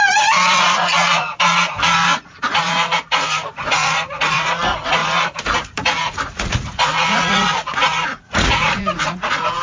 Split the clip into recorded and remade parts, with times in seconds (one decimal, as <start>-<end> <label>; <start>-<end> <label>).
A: 0.0-5.0 remade; 5.0-5.6 recorded; 5.6-9.6 remade